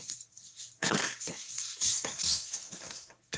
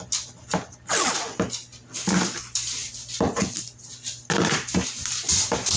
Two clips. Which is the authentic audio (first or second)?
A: second